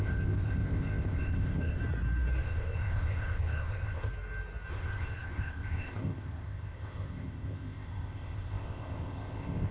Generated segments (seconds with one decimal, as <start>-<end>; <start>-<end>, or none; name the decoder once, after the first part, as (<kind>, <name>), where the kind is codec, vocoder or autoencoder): 0.0-1.8 (codec, ZipCodec); 2.4-4.1; 4.7-9.7